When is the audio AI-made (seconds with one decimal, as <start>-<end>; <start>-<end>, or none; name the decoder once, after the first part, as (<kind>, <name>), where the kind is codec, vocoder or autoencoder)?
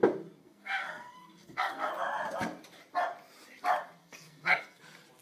0.4-1.9 (codec, SNAC); 4.0-4.8